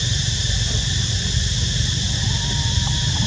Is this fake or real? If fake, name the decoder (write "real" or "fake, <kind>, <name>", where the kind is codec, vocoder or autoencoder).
real